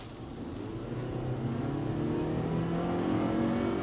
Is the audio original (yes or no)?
yes